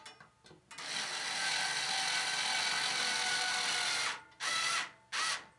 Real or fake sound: real